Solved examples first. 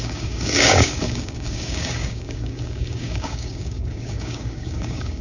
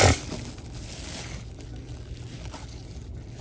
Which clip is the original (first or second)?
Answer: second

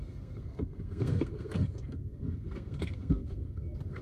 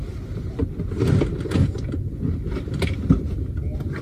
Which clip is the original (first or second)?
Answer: second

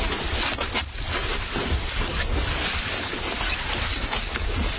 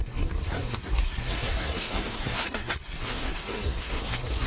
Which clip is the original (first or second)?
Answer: first